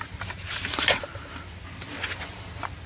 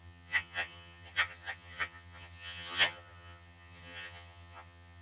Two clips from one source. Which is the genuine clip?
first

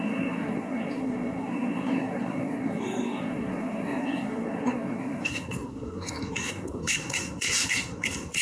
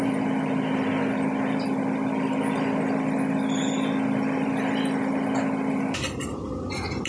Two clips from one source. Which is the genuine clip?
second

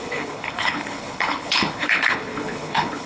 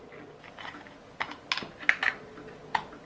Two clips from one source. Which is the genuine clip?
second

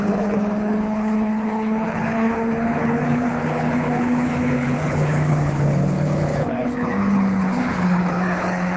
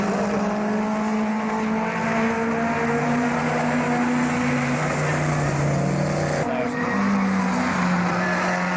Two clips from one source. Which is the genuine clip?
second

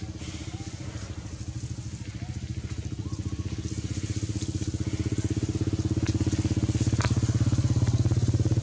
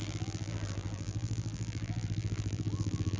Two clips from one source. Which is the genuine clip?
first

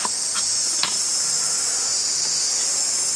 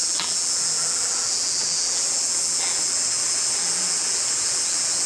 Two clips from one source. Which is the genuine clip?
first